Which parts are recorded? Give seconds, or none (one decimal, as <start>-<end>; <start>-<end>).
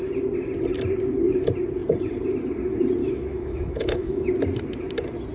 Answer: 0.0-3.0; 4.3-5.3